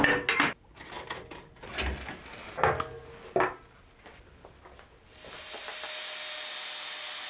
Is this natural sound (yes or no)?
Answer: yes